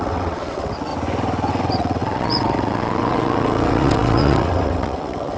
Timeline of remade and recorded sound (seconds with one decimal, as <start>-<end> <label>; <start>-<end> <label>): 0.0-0.9 remade; 0.9-1.5 recorded; 1.5-5.4 remade